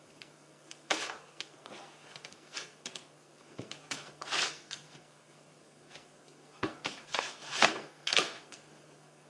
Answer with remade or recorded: remade